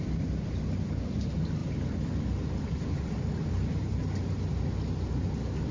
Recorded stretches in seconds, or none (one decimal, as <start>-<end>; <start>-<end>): 0.0-5.7